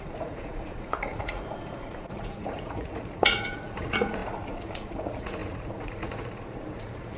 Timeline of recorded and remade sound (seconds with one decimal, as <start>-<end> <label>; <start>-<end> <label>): 0.0-7.2 remade